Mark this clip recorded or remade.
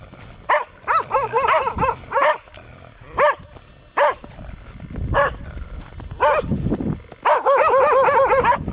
recorded